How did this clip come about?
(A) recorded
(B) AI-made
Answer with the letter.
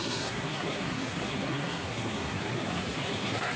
B